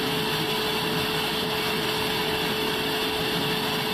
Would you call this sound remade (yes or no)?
no